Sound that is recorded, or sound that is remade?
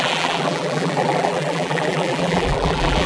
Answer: remade